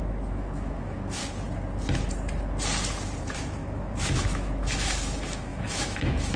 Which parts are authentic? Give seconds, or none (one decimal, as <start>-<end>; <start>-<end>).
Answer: 1.2-3.2